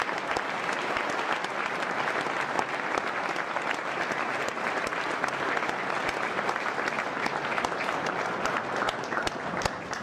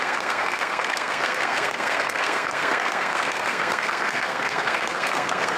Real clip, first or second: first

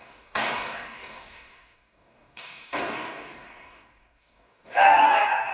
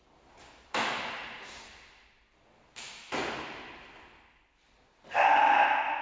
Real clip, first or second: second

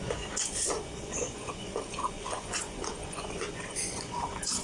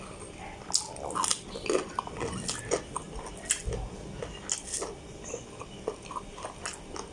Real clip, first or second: second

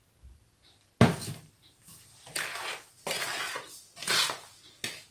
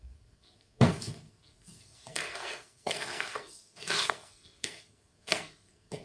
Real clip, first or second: first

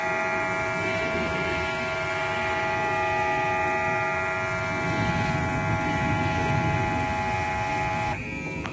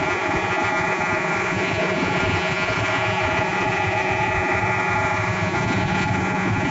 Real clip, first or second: first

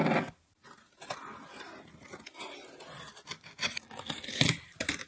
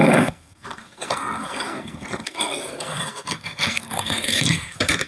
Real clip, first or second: first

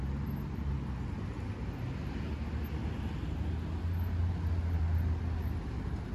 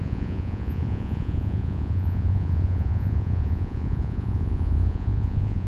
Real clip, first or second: first